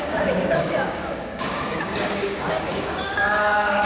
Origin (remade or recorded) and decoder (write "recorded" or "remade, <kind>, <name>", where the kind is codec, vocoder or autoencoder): remade, codec, DAC